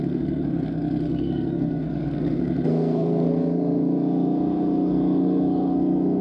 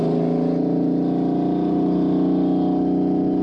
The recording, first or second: second